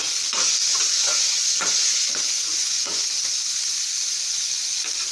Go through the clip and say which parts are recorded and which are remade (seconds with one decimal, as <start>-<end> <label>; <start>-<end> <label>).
0.0-0.7 recorded; 0.7-3.1 remade; 3.1-5.1 recorded